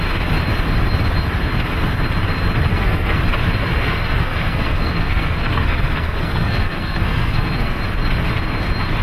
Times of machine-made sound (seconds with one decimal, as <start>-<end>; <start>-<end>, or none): 2.7-3.2; 3.6-7.8